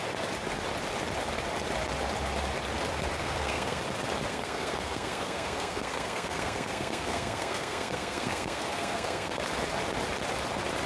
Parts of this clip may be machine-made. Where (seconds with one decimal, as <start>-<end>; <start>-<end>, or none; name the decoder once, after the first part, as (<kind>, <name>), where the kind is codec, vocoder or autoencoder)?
3.2-3.8 (codec, SNAC); 4.3-9.4